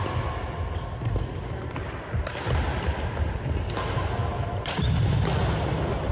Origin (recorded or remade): recorded